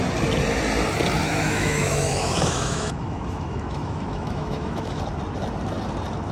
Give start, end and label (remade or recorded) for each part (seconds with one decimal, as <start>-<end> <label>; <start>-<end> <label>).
0.0-1.2 recorded; 1.2-5.0 remade; 5.0-6.3 recorded